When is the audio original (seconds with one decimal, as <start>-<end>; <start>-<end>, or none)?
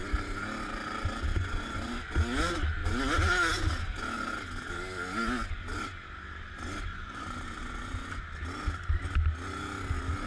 0.0-1.3; 2.1-6.9; 8.2-10.3